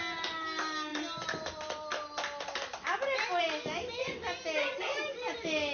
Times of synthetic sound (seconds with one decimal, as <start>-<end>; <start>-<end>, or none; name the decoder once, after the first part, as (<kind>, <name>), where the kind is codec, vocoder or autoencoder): none